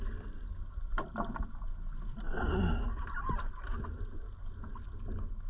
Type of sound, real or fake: real